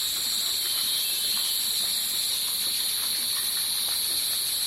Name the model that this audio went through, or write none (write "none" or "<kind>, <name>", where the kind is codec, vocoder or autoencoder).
none